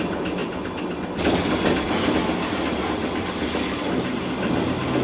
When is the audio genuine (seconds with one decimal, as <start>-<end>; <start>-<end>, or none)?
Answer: 0.0-5.0